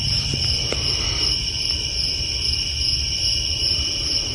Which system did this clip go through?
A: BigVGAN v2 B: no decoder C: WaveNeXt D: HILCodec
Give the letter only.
A